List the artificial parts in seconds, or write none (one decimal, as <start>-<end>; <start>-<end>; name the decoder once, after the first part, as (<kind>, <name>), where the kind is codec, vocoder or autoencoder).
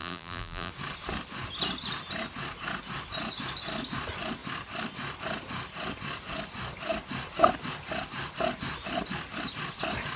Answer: 0.0-0.7 (vocoder, BigVGAN v2)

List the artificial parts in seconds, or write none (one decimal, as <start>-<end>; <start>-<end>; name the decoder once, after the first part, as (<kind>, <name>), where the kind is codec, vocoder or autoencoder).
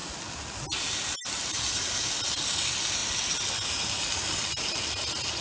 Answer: none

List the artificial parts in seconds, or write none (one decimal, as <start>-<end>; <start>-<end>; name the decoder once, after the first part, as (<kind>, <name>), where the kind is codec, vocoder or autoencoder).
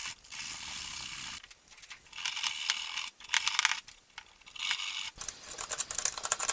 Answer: none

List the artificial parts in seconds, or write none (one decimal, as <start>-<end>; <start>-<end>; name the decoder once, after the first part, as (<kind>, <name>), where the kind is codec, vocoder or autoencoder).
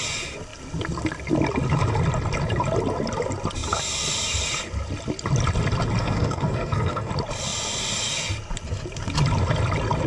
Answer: 6.0-7.1 (codec, SNAC)